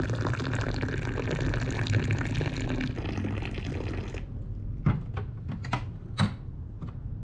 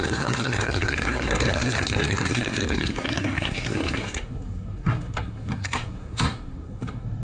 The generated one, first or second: second